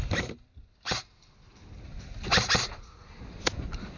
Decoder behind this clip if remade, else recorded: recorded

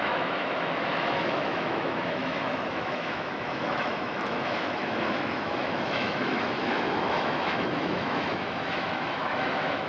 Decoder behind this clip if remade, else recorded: remade, autoencoder, DAC-VAE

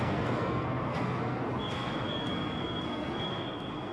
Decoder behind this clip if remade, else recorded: remade, codec, SNAC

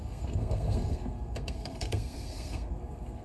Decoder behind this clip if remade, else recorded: remade, codec, SNAC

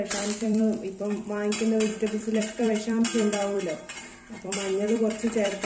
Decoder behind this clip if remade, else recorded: remade, vocoder, BigVGAN v2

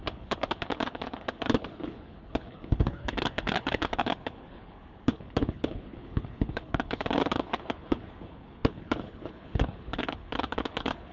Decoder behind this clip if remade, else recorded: remade, codec, HILCodec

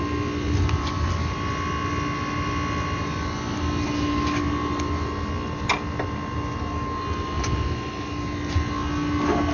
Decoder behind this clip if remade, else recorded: recorded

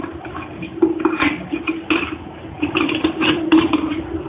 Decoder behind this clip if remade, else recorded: recorded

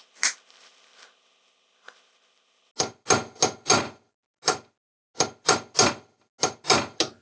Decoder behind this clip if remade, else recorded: recorded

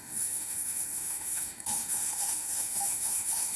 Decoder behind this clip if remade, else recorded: remade, autoencoder, DAC-VAE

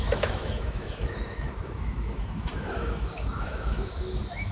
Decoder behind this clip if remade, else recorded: remade, autoencoder, DAC-VAE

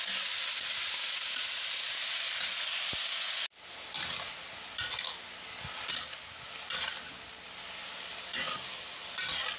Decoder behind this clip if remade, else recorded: recorded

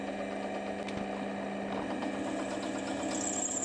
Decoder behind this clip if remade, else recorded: recorded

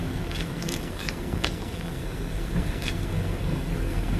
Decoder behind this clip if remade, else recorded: remade, codec, SNAC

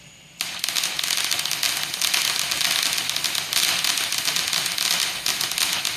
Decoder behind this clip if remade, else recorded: recorded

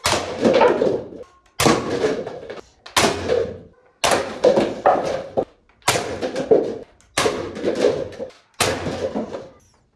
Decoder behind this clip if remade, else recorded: recorded